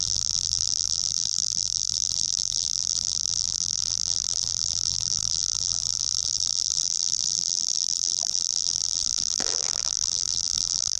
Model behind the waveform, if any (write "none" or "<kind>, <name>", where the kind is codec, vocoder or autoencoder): vocoder, BigVGAN v2